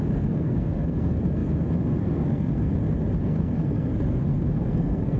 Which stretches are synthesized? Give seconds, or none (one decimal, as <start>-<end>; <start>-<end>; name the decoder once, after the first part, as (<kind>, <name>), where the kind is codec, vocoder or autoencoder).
0.0-2.7 (codec, SNAC); 3.2-5.2